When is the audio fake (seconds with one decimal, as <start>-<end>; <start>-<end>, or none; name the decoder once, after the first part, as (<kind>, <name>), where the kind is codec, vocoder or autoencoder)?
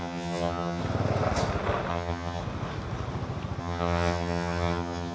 0.0-0.8 (vocoder, HiFi-GAN); 1.9-2.4; 3.6-5.1